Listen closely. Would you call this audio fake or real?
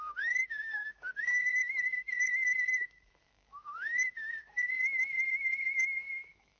fake